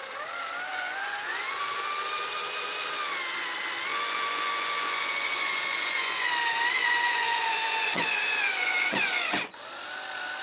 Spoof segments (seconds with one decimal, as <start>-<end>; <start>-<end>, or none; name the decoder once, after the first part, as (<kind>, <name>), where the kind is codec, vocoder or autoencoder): 0.7-1.9 (vocoder, Vocos); 3.9-6.3; 6.8-9.6

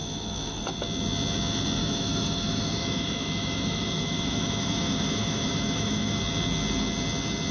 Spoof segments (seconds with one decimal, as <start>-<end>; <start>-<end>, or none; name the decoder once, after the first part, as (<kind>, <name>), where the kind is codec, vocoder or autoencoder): 0.0-0.6 (autoencoder, DAC-VAE); 1.8-6.2

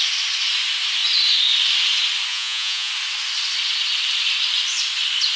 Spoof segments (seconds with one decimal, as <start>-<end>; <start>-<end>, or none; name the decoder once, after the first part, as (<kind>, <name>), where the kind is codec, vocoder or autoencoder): 2.3-2.9 (vocoder, Vocos)